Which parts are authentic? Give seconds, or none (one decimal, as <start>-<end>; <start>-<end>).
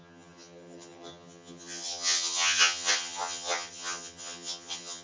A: none